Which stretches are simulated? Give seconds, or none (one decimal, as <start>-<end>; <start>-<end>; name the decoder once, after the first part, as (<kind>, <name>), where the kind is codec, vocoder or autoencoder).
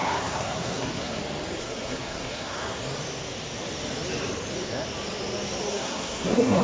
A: 0.0-1.2 (codec, SNAC); 1.6-2.8; 5.7-6.6